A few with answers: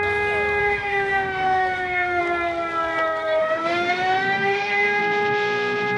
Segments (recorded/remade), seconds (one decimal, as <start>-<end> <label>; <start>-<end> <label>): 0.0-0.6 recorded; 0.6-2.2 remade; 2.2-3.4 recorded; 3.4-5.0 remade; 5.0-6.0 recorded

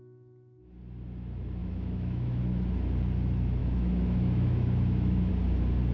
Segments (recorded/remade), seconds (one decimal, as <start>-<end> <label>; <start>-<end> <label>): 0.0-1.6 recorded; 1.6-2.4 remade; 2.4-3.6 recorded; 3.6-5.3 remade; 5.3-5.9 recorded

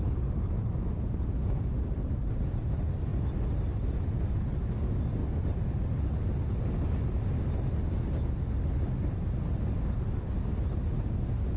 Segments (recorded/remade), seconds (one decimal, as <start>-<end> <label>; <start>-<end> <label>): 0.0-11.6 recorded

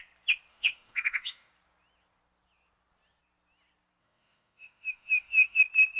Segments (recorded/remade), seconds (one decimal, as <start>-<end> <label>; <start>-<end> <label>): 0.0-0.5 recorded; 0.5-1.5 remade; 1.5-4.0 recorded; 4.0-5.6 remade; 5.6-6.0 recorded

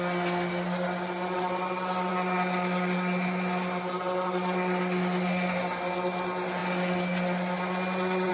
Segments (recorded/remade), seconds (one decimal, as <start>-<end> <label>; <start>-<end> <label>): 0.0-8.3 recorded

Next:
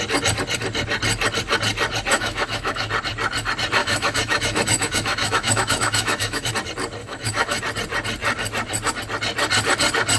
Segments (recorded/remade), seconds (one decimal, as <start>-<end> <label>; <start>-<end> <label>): 0.0-2.1 recorded; 2.1-2.9 remade; 2.9-3.8 recorded; 3.8-6.5 remade; 6.5-7.0 recorded; 7.0-7.6 remade; 7.6-10.2 recorded